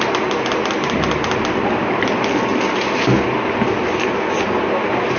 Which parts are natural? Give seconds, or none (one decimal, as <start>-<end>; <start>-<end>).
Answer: 0.0-5.2